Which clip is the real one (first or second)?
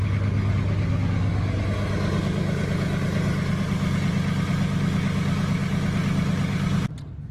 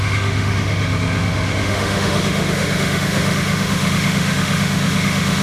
first